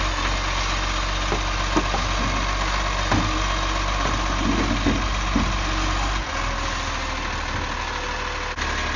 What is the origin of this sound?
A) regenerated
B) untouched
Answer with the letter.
B